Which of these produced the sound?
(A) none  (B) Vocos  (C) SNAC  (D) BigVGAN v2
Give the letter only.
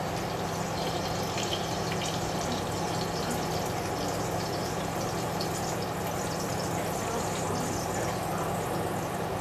A